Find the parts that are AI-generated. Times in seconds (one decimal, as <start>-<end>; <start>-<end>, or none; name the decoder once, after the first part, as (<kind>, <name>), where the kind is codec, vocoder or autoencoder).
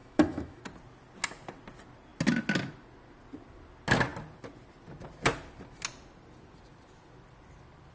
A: 0.0-0.6 (autoencoder, DAC-VAE)